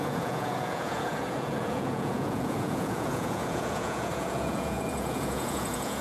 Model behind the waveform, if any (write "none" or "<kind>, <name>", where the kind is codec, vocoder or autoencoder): vocoder, Vocos